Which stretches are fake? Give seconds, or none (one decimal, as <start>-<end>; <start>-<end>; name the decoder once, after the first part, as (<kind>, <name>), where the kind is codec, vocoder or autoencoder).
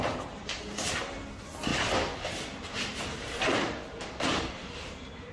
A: 1.7-5.3 (vocoder, BigVGAN v2)